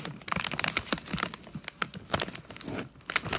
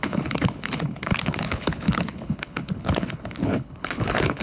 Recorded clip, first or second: first